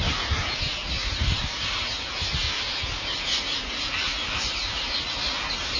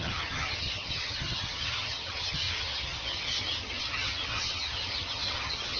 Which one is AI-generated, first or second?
second